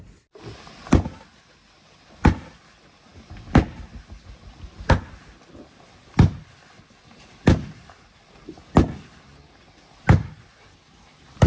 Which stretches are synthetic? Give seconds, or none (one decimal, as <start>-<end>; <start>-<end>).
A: none